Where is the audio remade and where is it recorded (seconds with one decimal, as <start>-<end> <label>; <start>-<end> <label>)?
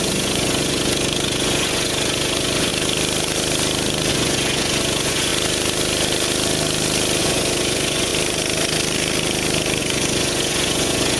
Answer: 0.0-2.7 remade; 2.7-4.1 recorded; 4.1-5.3 remade; 5.3-7.2 recorded; 7.2-8.1 remade; 8.1-9.8 recorded; 9.8-11.2 remade